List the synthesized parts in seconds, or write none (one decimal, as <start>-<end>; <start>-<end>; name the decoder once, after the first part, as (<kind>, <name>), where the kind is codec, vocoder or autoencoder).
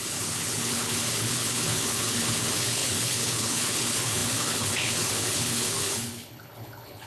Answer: 0.0-7.1 (codec, HILCodec)